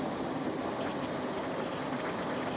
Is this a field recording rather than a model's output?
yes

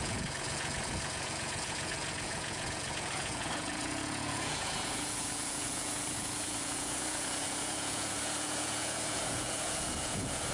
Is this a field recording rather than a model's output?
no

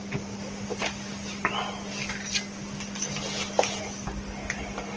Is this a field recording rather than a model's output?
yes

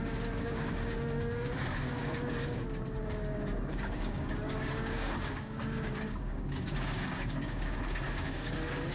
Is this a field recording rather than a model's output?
no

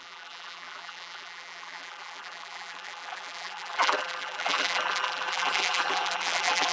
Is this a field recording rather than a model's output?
no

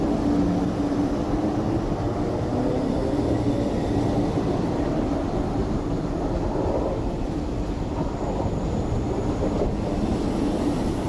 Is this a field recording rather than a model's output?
yes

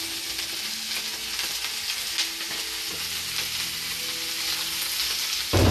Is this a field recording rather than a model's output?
yes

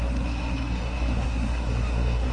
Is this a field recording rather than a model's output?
no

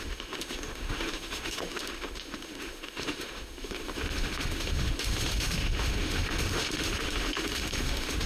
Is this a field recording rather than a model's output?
no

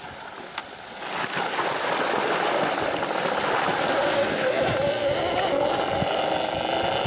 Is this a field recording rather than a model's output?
yes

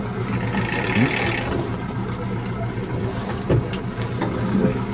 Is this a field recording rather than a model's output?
yes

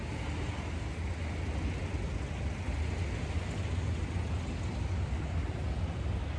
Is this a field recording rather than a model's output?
yes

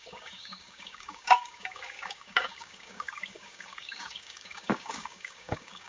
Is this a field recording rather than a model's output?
no